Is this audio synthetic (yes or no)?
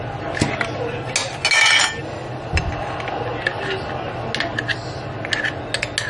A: no